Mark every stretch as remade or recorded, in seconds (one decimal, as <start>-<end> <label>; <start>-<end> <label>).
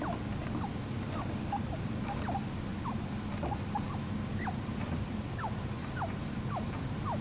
0.0-7.2 remade